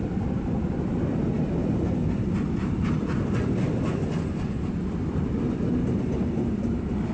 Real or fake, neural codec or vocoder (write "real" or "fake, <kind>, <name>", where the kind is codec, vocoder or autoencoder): fake, vocoder, BigVGAN v2